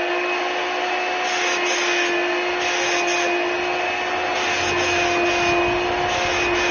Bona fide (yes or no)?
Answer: yes